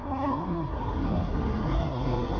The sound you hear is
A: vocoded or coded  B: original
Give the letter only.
A